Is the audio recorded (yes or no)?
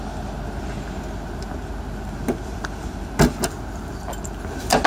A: yes